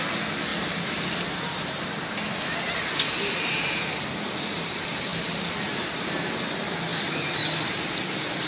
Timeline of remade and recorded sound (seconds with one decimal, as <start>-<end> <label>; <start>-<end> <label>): 0.0-8.5 recorded